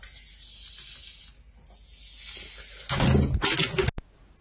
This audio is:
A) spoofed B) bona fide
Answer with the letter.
B